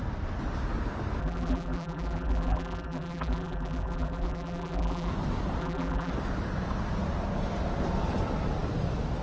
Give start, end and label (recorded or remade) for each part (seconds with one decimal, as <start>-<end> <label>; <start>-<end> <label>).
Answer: 0.0-1.2 recorded; 1.2-5.1 remade; 5.1-5.6 recorded; 5.6-6.1 remade; 6.1-9.2 recorded